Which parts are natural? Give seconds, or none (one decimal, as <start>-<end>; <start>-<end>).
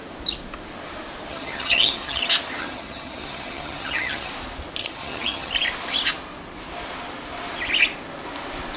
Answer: 0.0-1.3; 2.2-2.6; 4.3-4.8; 5.5-8.8